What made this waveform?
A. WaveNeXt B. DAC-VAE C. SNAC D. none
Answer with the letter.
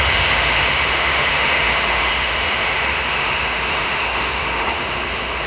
B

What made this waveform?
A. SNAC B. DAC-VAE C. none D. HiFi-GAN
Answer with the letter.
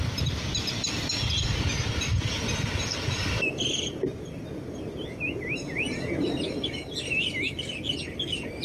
C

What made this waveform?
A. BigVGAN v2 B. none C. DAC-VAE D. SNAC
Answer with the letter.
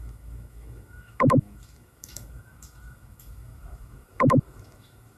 C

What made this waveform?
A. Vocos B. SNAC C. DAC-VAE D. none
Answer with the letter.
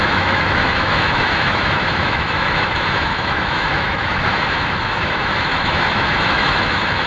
C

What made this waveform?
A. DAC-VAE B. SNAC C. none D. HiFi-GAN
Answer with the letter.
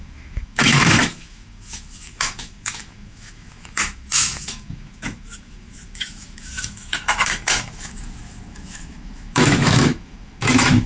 A